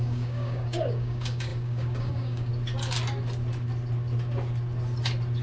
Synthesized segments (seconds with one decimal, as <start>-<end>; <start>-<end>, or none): 0.0-2.5